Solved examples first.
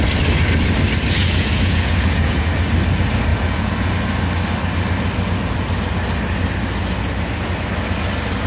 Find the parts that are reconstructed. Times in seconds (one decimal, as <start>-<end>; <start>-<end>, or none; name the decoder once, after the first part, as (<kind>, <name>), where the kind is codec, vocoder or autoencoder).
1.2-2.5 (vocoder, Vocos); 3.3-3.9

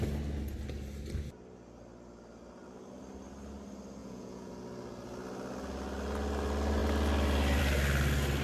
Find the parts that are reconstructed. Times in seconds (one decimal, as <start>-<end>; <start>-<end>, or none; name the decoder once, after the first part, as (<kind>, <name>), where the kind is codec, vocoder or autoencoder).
4.0-4.5 (vocoder, Vocos)

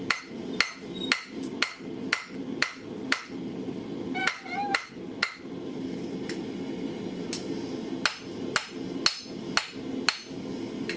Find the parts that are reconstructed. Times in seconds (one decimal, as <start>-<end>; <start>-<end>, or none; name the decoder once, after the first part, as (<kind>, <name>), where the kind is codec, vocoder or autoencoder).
none

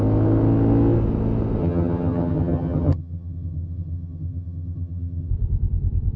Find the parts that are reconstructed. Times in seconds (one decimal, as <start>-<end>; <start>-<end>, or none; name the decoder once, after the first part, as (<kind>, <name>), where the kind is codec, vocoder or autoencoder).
1.6-5.3 (vocoder, HiFi-GAN)

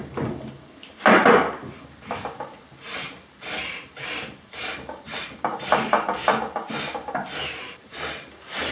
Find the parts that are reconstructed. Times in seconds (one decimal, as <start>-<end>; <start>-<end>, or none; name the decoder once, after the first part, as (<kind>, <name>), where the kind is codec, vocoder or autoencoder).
3.7-8.7 (vocoder, BigVGAN v2)

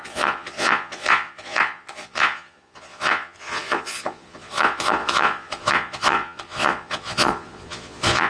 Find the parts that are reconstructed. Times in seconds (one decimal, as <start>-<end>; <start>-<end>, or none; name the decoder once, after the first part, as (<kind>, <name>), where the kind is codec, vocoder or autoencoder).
0.0-8.3 (vocoder, Vocos)

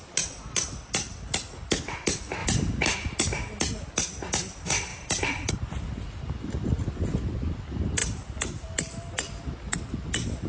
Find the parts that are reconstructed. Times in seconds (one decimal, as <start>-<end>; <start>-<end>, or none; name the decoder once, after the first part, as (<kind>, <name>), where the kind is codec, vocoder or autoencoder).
4.9-5.5 (vocoder, BigVGAN v2); 8.0-8.9

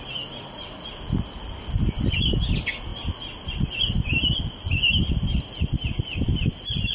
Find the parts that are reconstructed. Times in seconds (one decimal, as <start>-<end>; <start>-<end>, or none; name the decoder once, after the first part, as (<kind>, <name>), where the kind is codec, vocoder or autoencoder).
none